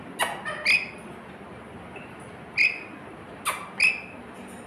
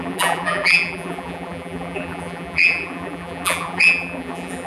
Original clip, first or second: first